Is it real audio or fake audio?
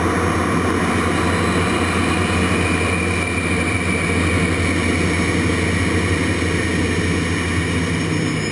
real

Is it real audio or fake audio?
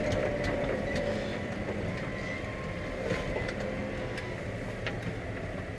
real